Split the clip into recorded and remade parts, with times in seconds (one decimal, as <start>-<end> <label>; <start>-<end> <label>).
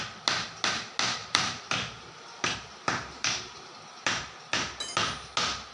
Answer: 0.0-1.2 recorded; 1.2-4.6 remade; 4.6-5.7 recorded